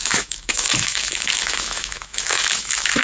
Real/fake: fake